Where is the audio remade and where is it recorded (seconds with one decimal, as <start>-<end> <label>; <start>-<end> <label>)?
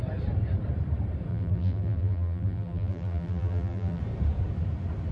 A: 0.0-1.3 recorded; 1.3-4.0 remade; 4.0-5.1 recorded